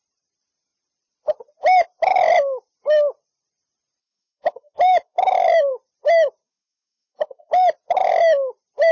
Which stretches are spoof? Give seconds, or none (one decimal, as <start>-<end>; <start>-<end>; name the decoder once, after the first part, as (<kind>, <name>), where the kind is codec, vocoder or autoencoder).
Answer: 4.0-5.7 (autoencoder, DAC-VAE); 6.4-7.5